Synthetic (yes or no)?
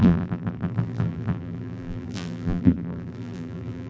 yes